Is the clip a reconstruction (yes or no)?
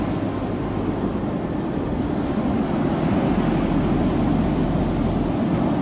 no